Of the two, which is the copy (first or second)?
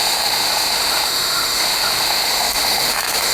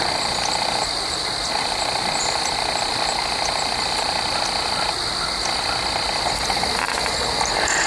first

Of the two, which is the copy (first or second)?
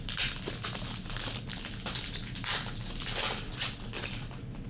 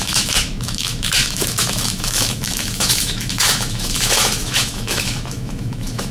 second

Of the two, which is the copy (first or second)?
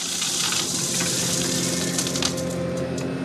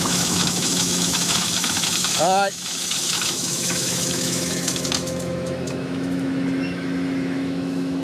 second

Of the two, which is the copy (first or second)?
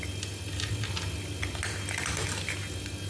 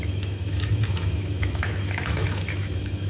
second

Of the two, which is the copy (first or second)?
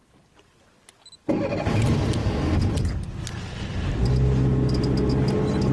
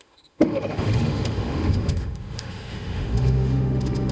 second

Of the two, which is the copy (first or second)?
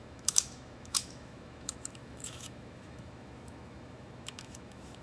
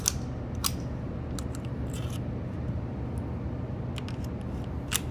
first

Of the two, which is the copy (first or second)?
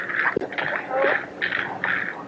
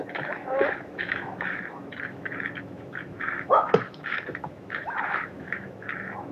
second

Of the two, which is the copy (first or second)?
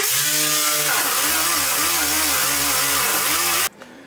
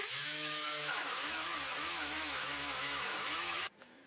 second